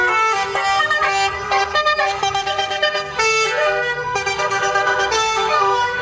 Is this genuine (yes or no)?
no